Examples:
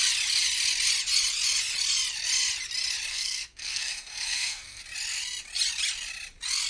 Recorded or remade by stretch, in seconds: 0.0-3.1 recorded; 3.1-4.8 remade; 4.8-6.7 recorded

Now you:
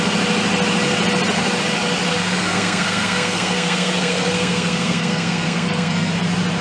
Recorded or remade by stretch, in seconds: 0.0-2.1 recorded; 2.1-6.1 remade; 6.1-6.6 recorded

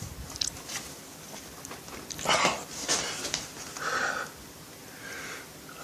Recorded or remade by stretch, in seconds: 0.0-5.8 recorded